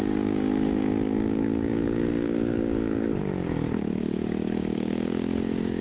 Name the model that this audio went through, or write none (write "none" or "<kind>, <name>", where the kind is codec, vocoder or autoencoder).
codec, DAC